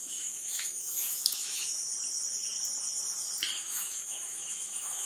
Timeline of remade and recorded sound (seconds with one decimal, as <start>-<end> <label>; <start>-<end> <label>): 0.0-1.9 remade; 1.9-3.6 recorded; 3.6-5.1 remade